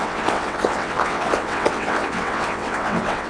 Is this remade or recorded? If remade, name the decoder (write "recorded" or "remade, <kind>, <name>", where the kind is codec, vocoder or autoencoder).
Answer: remade, vocoder, WaveNeXt